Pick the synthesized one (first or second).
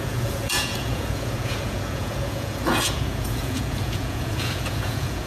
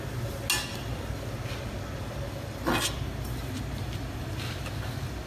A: first